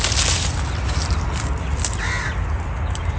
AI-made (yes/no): no